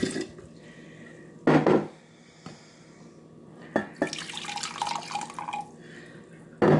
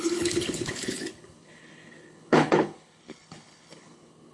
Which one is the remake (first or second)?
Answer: second